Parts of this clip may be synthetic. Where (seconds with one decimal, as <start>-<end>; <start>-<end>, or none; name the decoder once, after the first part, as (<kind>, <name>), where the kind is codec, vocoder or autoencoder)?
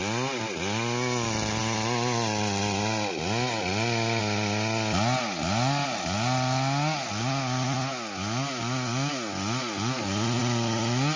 none